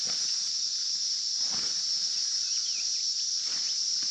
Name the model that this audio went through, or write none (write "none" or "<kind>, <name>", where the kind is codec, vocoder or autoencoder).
none